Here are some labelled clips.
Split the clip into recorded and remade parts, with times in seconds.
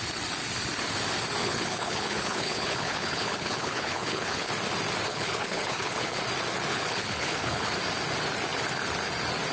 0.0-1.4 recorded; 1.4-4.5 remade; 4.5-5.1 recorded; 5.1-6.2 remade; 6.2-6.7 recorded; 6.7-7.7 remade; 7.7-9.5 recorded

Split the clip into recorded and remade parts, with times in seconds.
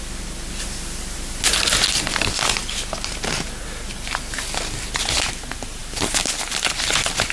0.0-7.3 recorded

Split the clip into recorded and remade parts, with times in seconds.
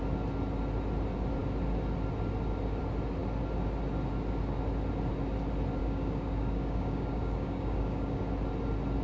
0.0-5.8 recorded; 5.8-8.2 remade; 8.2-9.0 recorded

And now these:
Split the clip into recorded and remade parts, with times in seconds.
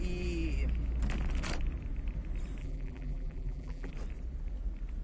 0.0-2.6 recorded; 2.6-3.9 remade; 3.9-5.0 recorded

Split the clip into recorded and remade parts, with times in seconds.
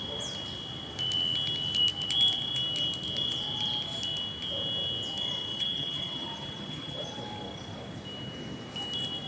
0.0-5.5 recorded; 5.5-7.2 remade; 7.2-9.3 recorded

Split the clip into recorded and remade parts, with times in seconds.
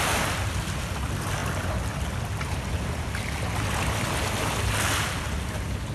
0.0-5.9 recorded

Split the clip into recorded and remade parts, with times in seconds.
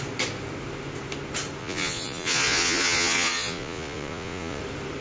0.0-1.6 recorded; 1.6-4.6 remade; 4.6-5.0 recorded